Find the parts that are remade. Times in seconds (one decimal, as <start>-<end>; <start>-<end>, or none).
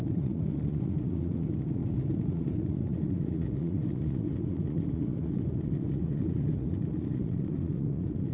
0.0-8.3